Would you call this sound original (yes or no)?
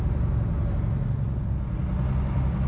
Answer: yes